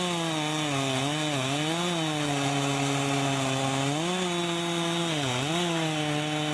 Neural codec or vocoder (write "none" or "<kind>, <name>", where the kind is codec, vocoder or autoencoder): none